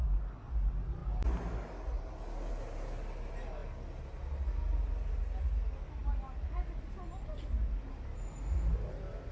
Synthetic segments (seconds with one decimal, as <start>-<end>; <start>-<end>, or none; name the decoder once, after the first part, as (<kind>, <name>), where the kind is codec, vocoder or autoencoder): none